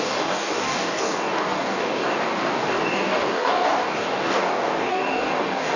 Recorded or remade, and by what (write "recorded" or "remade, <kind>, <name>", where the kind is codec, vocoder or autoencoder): remade, codec, DAC